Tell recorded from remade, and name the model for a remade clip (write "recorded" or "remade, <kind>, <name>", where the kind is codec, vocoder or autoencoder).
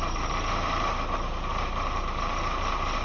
remade, vocoder, BigVGAN v2